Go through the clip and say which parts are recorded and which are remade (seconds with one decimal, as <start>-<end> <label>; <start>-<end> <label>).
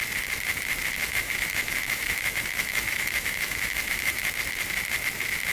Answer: 0.0-1.0 recorded; 1.0-4.3 remade; 4.3-5.5 recorded